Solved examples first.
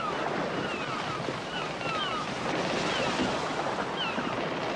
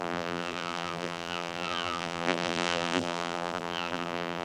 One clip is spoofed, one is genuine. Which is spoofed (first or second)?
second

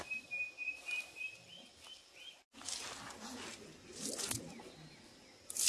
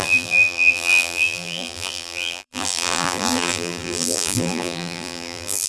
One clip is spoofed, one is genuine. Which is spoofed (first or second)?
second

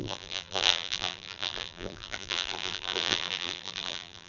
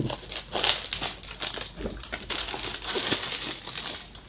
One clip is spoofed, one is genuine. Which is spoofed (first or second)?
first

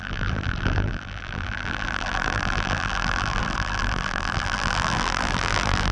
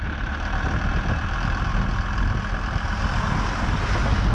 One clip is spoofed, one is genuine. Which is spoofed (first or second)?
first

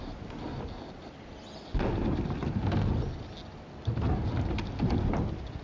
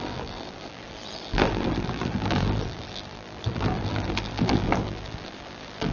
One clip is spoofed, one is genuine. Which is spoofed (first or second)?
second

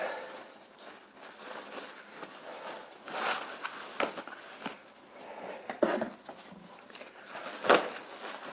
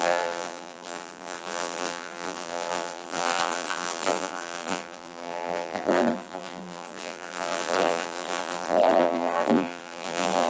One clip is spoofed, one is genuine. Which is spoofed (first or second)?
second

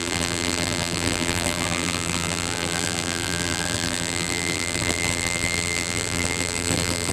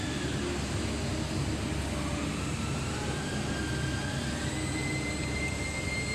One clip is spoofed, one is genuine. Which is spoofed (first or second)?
first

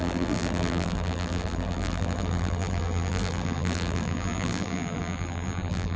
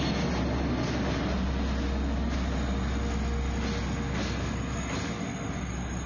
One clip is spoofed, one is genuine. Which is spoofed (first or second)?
first